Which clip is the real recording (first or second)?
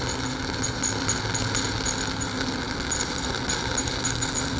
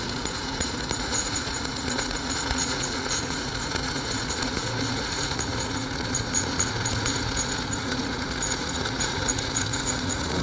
first